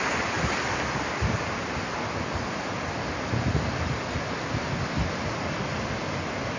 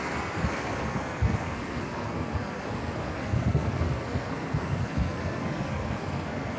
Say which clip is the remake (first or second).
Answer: second